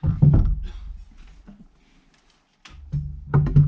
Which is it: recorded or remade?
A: recorded